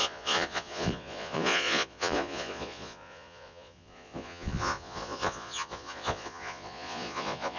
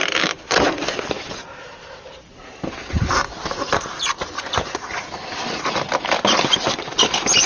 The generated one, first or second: first